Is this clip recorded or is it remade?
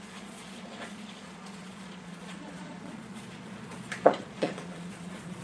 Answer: remade